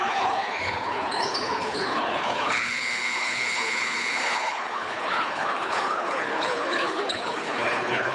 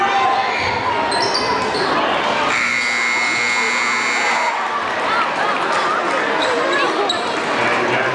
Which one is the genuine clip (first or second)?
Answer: second